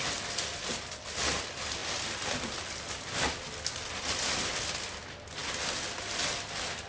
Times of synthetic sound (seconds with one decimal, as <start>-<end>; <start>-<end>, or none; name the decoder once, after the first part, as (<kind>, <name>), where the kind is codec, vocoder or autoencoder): none